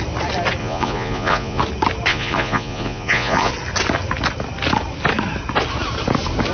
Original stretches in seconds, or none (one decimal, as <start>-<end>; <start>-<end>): 0.0-0.6; 1.6-2.1; 3.5-6.5